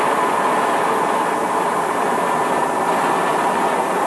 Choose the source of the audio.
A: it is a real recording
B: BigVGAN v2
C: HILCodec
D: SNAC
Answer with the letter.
A